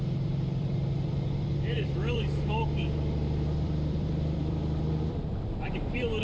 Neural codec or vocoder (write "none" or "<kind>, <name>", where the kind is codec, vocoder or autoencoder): vocoder, BigVGAN v2